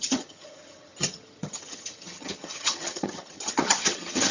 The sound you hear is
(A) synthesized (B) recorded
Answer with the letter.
A